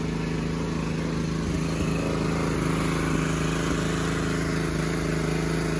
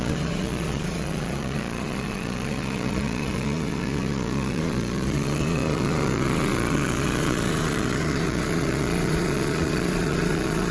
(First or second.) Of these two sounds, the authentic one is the first